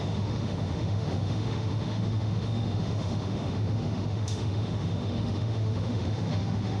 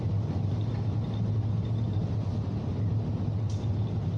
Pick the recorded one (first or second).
second